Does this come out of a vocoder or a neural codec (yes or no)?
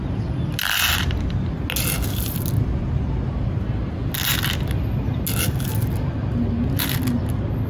no